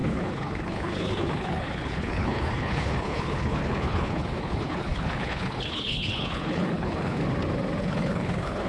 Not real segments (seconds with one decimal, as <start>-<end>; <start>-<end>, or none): 0.0-7.2; 7.8-8.7